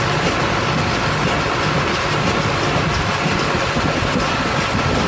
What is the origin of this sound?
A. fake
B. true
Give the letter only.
B